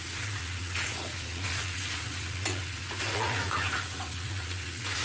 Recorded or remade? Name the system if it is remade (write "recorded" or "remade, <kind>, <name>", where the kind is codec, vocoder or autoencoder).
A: remade, vocoder, Vocos